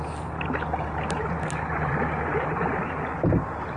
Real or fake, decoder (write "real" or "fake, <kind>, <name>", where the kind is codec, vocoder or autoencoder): real